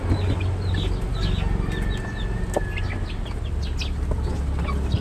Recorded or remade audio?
recorded